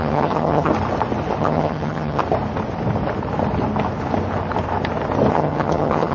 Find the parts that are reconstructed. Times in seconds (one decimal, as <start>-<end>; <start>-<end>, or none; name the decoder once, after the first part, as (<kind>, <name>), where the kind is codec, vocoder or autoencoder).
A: 0.0-0.7 (vocoder, HiFi-GAN); 1.4-2.2; 5.3-6.1